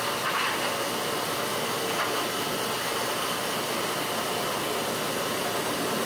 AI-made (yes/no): no